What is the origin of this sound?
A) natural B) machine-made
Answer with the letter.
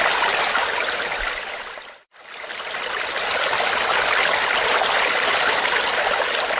A